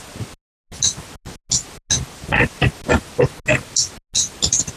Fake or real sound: real